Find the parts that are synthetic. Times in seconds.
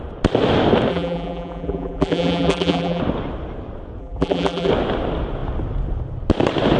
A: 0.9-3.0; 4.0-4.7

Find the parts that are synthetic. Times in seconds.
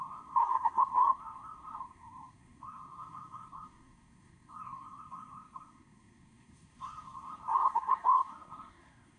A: 0.0-9.2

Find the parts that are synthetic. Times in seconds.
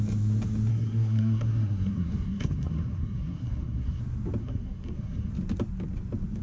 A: 0.7-4.0; 4.4-5.3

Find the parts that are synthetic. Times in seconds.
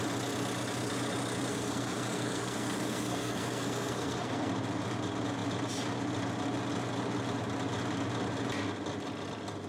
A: 1.5-4.5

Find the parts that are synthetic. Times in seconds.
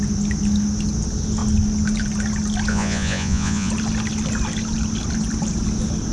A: 2.7-3.7